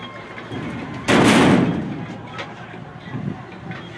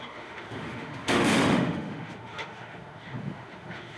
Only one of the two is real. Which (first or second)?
first